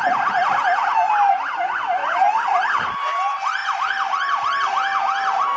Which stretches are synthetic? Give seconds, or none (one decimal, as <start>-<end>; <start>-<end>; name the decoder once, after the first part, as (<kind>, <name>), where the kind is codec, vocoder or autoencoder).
2.0-2.9 (vocoder, BigVGAN v2); 3.6-5.6